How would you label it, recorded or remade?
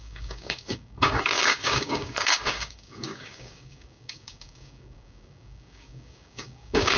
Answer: remade